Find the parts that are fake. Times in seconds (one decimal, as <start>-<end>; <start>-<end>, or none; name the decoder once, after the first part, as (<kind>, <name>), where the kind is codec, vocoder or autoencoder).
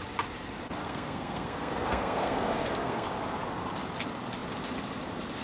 0.8-3.1 (codec, SNAC)